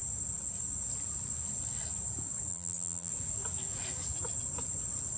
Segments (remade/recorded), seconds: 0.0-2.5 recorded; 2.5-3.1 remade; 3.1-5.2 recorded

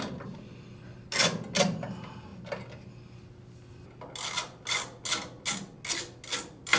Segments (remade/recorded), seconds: 0.0-6.8 recorded

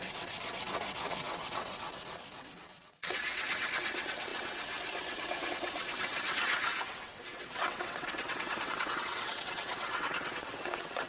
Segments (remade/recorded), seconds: 0.0-11.1 remade